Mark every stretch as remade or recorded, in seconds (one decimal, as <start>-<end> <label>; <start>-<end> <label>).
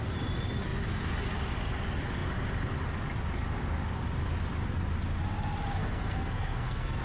0.0-5.8 recorded; 5.8-7.0 remade